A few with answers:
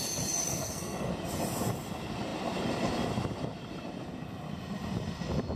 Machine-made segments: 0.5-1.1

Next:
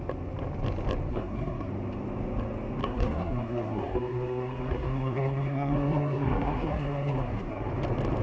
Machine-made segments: 1.1-1.7; 2.8-7.7

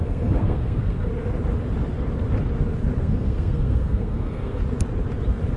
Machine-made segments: 0.0-1.1; 3.0-4.6